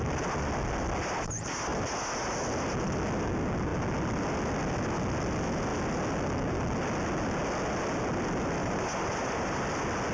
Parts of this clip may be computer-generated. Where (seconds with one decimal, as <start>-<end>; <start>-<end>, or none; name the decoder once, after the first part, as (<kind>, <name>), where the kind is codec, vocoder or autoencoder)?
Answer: 8.6-9.6 (vocoder, BigVGAN v2)